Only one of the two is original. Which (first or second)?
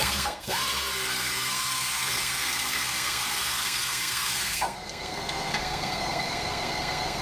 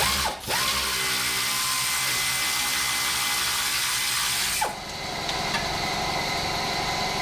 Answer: second